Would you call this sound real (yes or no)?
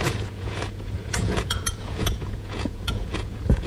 no